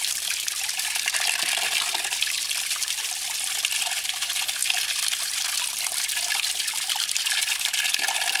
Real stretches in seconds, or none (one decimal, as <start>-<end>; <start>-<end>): 0.0-8.4